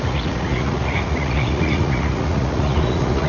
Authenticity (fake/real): fake